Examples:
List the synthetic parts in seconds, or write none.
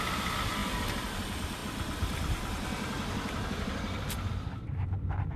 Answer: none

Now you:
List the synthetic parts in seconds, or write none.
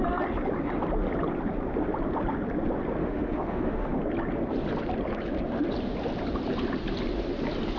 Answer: 3.0-4.0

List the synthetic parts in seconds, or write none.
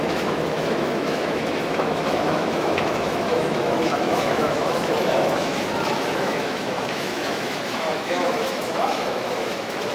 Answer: 0.0-9.9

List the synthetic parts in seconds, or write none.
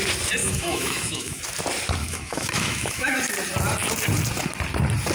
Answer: 0.4-1.4; 2.0-3.2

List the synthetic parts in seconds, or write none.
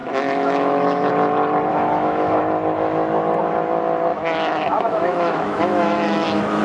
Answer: 0.0-1.1; 1.7-2.4; 4.1-6.6